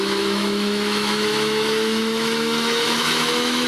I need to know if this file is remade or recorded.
remade